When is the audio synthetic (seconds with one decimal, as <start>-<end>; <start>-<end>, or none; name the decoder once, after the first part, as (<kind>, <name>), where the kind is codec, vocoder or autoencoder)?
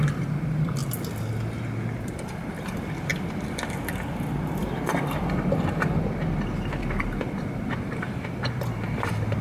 0.0-0.8 (vocoder, BigVGAN v2); 2.0-9.4